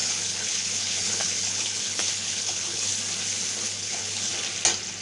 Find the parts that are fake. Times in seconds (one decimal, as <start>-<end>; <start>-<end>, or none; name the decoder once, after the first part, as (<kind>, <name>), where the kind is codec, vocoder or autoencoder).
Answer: 0.0-2.9 (codec, HILCodec); 3.6-4.3